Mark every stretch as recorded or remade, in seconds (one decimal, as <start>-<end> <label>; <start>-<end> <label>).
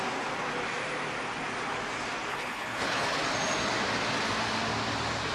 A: 0.0-2.3 recorded; 2.3-3.2 remade; 3.2-5.3 recorded